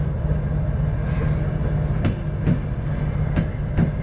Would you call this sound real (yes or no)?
yes